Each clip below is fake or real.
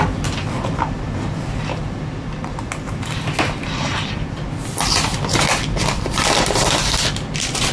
fake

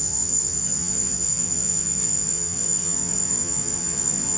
fake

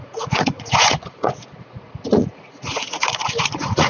fake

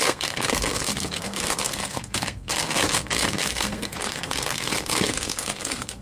fake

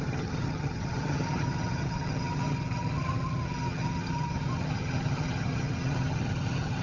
fake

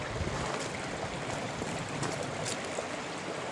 real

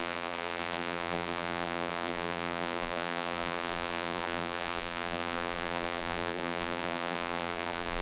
fake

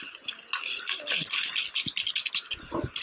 real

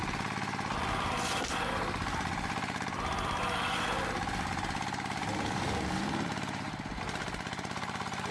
real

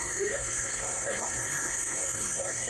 fake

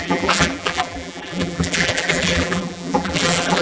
fake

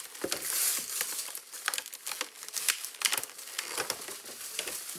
real